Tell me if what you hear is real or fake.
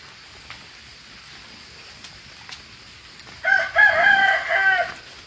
real